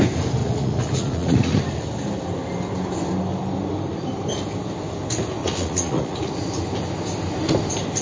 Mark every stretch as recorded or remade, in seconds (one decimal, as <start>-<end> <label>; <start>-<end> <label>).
0.0-0.4 recorded; 0.4-1.6 remade; 1.6-5.4 recorded; 5.4-6.3 remade; 6.3-8.0 recorded

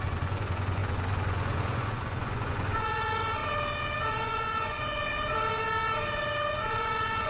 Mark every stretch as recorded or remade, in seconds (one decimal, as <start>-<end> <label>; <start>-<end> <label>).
0.0-3.4 remade; 3.4-4.1 recorded; 4.1-5.1 remade; 5.1-6.5 recorded; 6.5-7.3 remade

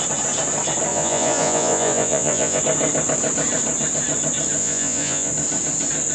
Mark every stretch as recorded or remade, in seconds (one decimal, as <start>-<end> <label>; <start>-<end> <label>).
0.0-0.9 recorded; 0.9-2.6 remade; 2.6-4.6 recorded; 4.6-5.3 remade; 5.3-6.1 recorded

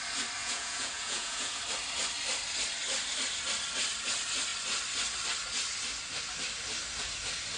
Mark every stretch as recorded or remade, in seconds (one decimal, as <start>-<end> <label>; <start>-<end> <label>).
0.0-0.4 recorded; 0.4-1.6 remade; 1.6-7.6 recorded